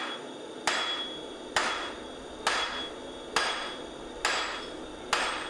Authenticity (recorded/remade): recorded